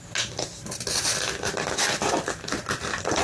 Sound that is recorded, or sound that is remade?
recorded